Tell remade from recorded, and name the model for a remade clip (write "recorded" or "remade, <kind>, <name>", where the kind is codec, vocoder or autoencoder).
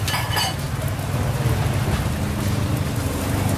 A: recorded